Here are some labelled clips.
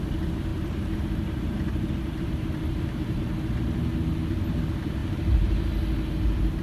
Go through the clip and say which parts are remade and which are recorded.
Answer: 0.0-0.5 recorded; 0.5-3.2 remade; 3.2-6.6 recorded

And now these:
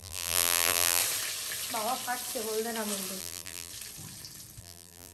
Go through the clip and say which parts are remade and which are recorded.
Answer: 0.0-1.0 remade; 1.0-3.2 recorded; 3.2-3.7 remade; 3.7-4.6 recorded; 4.6-5.1 remade

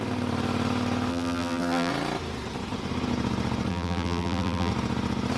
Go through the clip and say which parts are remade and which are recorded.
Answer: 0.0-1.1 recorded; 1.1-1.9 remade; 1.9-3.7 recorded; 3.7-4.7 remade; 4.7-5.4 recorded

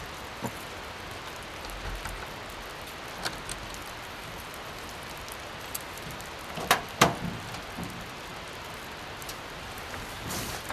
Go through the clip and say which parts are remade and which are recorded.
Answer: 0.0-3.8 recorded; 3.8-4.3 remade; 4.3-10.7 recorded